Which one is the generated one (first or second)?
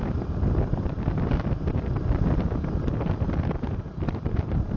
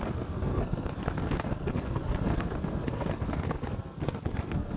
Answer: second